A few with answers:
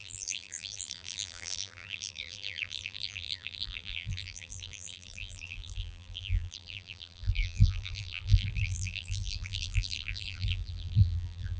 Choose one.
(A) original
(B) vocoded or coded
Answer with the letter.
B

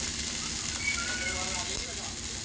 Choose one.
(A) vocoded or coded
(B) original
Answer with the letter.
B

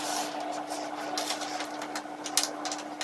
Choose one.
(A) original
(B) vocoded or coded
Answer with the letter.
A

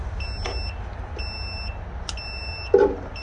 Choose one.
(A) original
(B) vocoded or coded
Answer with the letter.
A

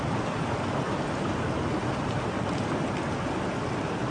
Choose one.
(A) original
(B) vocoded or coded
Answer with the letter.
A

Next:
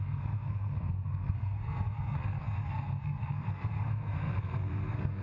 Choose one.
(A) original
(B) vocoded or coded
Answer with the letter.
B